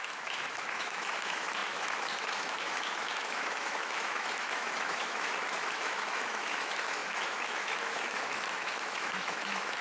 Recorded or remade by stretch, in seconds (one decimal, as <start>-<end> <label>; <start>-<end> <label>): 0.0-9.8 remade